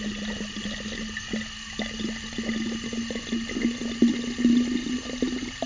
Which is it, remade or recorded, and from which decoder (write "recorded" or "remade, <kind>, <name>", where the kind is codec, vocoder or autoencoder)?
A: recorded